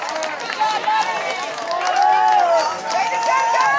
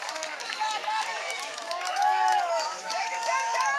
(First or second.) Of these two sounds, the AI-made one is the second